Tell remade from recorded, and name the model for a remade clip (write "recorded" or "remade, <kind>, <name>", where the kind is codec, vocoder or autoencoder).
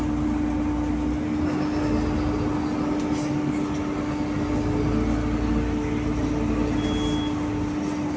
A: recorded